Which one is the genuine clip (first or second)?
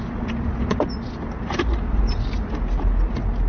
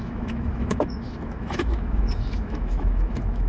first